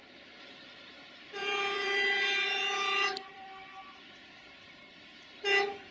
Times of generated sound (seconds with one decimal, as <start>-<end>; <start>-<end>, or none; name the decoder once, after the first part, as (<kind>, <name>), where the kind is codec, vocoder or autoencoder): 1.4-4.9 (vocoder, BigVGAN v2)